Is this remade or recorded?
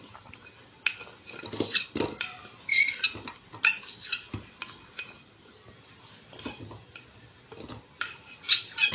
recorded